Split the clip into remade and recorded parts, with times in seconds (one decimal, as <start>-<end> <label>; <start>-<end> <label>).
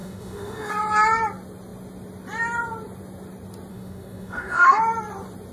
0.0-0.7 remade; 0.7-3.7 recorded; 3.7-4.8 remade; 4.8-5.5 recorded